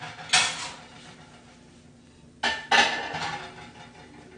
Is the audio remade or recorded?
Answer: recorded